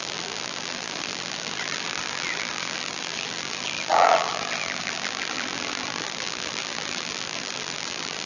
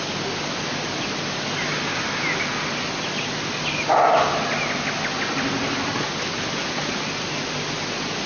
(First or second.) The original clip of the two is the second